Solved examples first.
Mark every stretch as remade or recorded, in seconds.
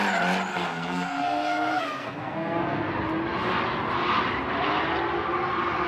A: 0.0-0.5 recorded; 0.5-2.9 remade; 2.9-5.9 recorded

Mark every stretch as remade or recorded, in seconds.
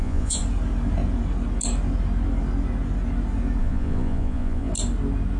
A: 0.0-0.4 remade; 0.4-3.6 recorded; 3.6-4.7 remade; 4.7-5.4 recorded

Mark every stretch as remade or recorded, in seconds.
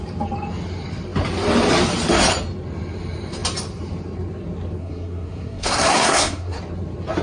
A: 0.0-4.8 recorded; 4.8-6.6 remade; 6.6-7.2 recorded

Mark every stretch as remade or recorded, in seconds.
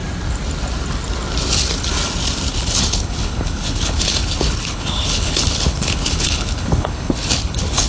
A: 0.0-2.5 recorded; 2.5-7.9 remade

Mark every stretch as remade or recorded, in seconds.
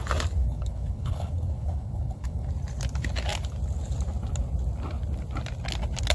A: 0.0-0.4 recorded; 0.4-2.5 remade; 2.5-6.1 recorded